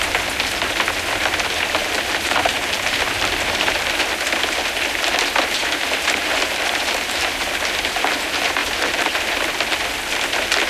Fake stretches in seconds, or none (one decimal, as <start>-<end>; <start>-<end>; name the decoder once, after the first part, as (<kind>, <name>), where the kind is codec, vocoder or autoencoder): 1.8-4.0 (vocoder, BigVGAN v2); 5.6-7.5; 8.6-9.2